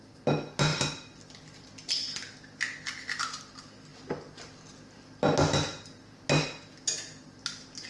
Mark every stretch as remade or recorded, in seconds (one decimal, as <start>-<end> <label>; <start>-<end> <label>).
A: 0.0-7.9 recorded